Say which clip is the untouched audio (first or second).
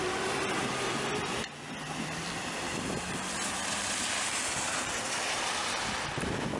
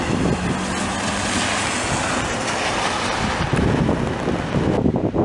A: second